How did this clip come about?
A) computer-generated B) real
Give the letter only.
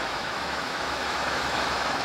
A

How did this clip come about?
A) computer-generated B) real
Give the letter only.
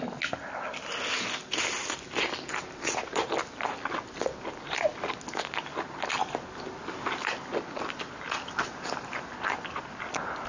B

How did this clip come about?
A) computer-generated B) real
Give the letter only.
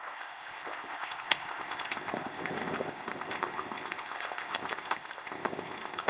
A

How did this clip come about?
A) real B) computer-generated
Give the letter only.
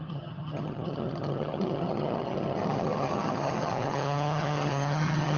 B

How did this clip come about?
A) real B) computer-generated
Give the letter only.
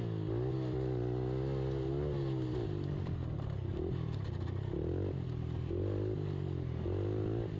A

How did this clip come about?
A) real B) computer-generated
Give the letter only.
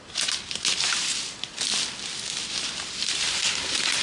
A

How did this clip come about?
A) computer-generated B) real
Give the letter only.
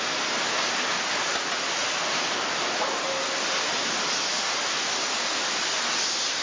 B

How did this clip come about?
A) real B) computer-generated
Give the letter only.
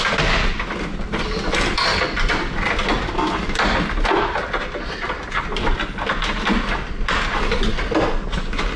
A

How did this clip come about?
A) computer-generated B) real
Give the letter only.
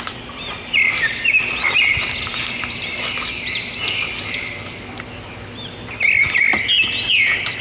B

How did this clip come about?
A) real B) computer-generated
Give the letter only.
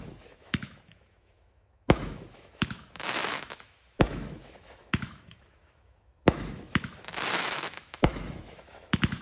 B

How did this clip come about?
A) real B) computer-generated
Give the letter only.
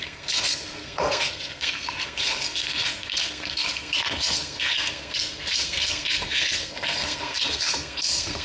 B